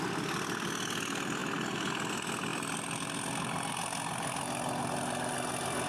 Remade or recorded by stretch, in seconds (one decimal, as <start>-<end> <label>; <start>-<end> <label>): 0.0-5.9 recorded